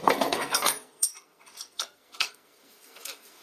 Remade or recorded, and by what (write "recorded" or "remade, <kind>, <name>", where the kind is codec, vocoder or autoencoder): remade, codec, SNAC